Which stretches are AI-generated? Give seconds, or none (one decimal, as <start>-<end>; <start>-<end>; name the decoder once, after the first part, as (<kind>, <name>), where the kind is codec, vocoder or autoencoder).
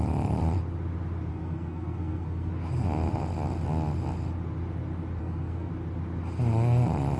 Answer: 1.3-2.5 (codec, SNAC); 5.2-5.7